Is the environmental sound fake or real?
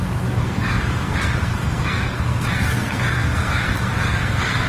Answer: fake